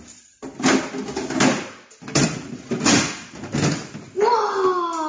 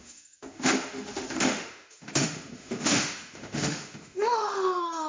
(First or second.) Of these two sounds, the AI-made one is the second